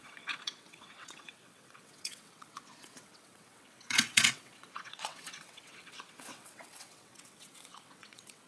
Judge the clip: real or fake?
fake